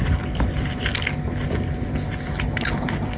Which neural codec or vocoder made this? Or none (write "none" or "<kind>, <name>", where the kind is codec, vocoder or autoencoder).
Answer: none